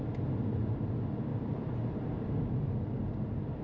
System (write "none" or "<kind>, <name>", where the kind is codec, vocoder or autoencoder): none